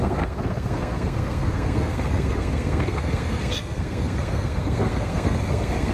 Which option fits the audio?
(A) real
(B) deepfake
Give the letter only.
B